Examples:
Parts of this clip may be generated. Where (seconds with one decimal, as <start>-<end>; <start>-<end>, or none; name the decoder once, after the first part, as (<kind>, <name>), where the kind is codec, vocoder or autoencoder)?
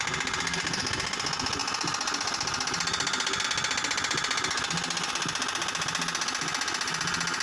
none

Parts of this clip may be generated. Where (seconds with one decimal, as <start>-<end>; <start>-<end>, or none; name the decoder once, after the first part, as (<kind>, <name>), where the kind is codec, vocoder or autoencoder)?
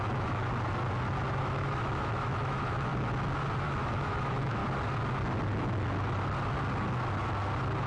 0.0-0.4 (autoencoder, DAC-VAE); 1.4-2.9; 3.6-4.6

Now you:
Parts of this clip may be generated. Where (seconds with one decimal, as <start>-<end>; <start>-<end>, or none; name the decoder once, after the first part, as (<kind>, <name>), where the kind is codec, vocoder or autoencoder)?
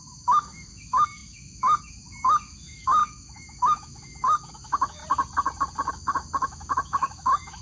0.0-5.0 (autoencoder, DAC-VAE); 5.9-7.6